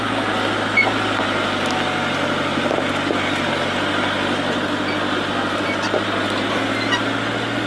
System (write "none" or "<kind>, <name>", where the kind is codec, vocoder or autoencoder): none